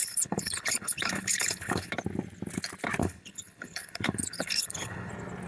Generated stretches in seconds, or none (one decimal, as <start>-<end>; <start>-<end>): 0.0-1.9; 3.0-5.1